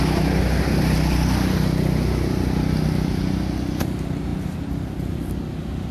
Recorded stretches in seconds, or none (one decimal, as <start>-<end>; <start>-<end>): 0.0-5.9